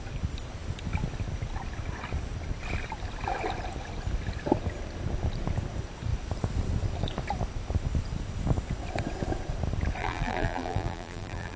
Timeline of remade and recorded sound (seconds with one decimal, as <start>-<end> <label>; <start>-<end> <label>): 0.0-10.0 recorded; 10.0-11.6 remade